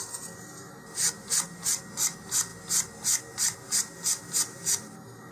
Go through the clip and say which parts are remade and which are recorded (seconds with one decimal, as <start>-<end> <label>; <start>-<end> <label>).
0.0-5.3 recorded